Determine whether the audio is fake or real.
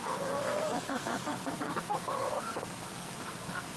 fake